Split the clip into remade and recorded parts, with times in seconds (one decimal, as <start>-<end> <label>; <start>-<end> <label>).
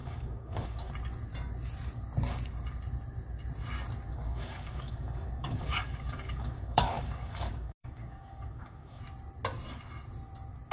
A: 0.0-0.9 remade; 0.9-4.1 recorded; 4.1-9.0 remade; 9.0-10.7 recorded